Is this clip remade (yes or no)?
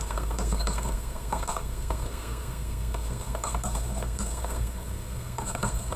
yes